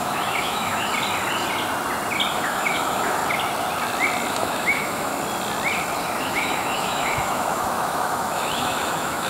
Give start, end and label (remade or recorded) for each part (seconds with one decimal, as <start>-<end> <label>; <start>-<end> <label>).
0.0-0.9 remade; 0.9-2.3 recorded; 2.3-3.2 remade; 3.2-4.3 recorded; 4.3-5.1 remade; 5.1-6.2 recorded; 6.2-9.3 remade